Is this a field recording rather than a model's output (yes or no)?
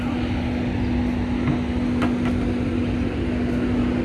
yes